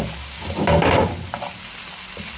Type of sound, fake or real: real